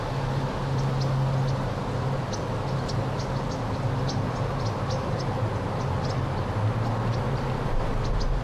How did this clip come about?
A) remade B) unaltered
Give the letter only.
B